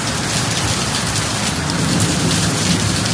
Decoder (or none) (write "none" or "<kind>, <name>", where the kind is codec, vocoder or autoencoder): none